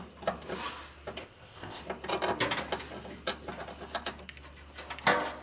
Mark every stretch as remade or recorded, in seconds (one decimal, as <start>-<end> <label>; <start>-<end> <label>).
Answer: 0.0-1.2 recorded; 1.2-1.8 remade; 1.8-5.4 recorded